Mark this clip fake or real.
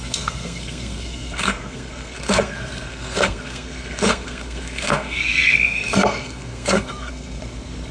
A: fake